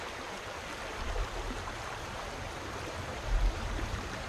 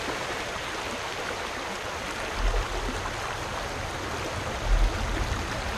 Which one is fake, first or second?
first